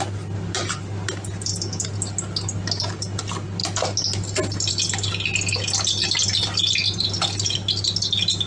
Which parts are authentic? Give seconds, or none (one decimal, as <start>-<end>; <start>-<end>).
0.0-8.5